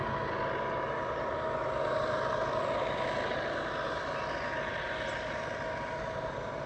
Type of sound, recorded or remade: recorded